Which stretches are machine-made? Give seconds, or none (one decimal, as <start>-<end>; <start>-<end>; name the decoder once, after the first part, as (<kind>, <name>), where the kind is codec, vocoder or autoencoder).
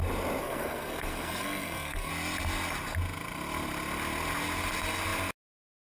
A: 0.4-2.1 (codec, SNAC)